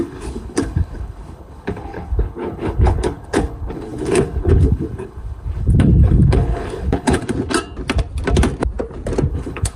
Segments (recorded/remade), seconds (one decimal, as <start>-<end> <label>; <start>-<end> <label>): 0.0-7.2 remade; 7.2-9.3 recorded; 9.3-9.8 remade